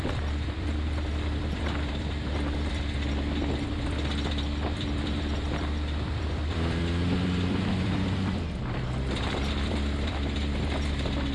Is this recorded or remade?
remade